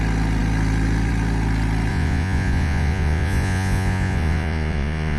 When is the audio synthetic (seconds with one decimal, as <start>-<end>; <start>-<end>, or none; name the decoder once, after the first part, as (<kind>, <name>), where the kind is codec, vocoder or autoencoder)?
1.9-5.2 (vocoder, Vocos)